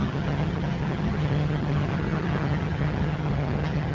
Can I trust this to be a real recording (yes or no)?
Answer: no